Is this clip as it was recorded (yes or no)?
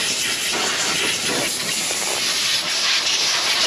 yes